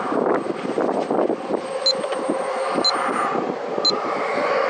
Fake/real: real